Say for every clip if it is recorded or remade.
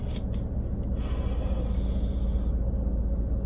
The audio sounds recorded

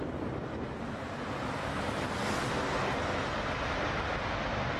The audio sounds recorded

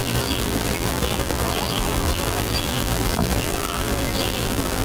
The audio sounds remade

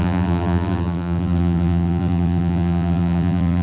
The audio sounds remade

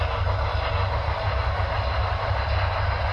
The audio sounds recorded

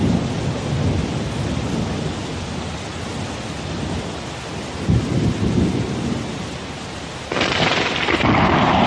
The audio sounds recorded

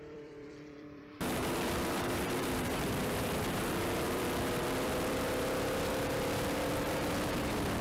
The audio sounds remade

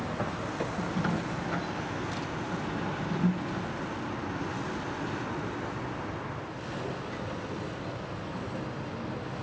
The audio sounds recorded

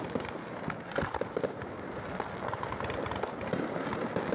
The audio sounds recorded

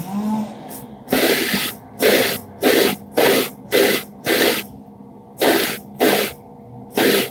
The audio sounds recorded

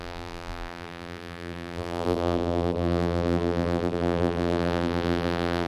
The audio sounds remade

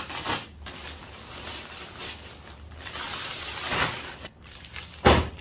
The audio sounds remade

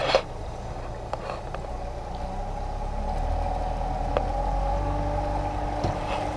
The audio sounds recorded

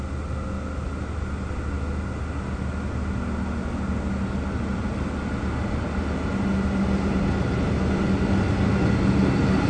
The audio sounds recorded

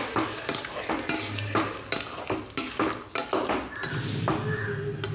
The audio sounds recorded